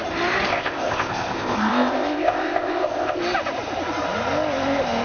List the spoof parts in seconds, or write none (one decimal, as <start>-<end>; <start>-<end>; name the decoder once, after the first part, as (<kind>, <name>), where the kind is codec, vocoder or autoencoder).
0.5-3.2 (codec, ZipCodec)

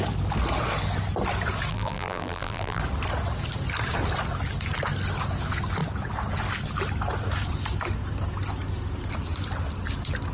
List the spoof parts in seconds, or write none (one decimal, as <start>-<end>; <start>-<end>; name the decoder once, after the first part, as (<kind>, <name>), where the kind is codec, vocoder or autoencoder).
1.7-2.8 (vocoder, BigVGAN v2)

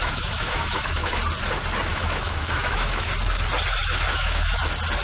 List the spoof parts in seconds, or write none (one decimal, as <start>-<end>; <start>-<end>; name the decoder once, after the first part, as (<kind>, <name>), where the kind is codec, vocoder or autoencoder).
0.0-1.2 (autoencoder, DAC-VAE); 1.9-3.1; 3.8-4.6